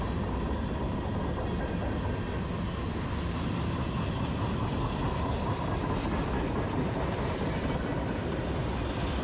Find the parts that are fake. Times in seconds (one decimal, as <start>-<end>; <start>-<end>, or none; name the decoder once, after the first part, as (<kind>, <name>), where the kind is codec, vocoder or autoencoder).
none